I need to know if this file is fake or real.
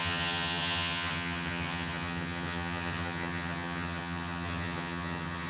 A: fake